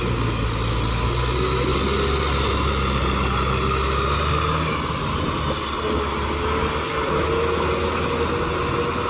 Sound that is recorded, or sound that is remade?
recorded